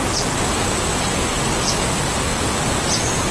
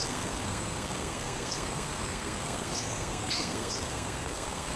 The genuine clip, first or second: first